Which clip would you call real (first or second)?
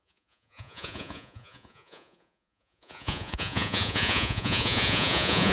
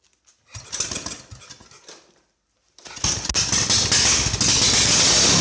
second